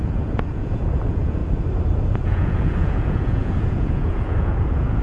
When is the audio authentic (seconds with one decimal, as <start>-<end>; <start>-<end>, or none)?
1.4-2.2